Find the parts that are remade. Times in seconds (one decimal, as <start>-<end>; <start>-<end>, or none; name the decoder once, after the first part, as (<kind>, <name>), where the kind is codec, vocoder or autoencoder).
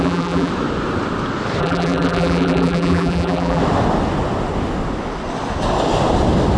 0.0-0.5 (vocoder, BigVGAN v2); 1.6-3.6